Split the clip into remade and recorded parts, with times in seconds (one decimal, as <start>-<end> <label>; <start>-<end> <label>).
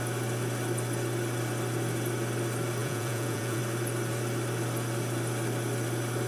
0.0-2.8 recorded; 2.8-3.6 remade; 3.6-6.3 recorded